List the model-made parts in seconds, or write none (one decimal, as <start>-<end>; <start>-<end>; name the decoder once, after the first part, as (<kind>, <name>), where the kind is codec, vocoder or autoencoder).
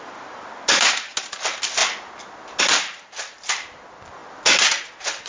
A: none